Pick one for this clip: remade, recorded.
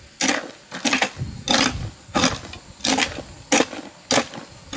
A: recorded